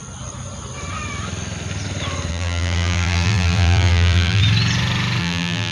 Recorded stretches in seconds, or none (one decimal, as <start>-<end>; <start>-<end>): 0.0-2.3; 4.4-5.2